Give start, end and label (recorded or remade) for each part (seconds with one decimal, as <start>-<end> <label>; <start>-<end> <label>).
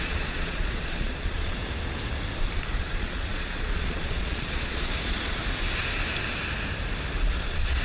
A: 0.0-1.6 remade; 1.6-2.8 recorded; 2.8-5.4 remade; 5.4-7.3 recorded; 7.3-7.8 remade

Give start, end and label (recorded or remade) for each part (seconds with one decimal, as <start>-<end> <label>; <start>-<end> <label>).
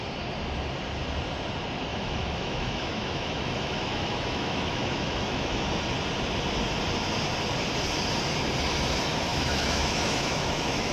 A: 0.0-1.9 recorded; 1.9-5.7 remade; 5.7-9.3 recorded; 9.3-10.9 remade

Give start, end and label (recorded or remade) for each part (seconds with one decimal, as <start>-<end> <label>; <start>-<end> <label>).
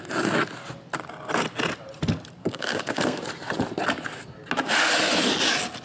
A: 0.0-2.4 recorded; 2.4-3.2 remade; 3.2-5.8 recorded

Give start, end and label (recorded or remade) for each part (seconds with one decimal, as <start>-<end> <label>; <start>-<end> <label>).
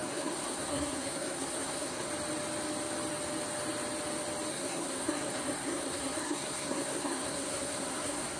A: 0.0-2.1 remade; 2.1-4.5 recorded; 4.5-8.4 remade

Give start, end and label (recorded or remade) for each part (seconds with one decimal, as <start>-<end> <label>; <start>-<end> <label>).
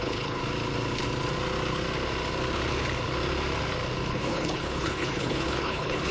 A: 0.0-0.4 remade; 0.4-4.1 recorded; 4.1-6.1 remade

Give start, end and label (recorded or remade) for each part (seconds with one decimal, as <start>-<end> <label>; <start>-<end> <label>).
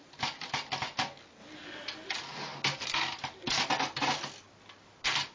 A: 0.0-5.3 recorded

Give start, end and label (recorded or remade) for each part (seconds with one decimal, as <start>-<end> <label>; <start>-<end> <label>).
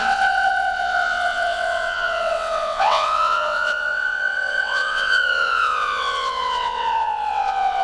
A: 0.0-7.8 remade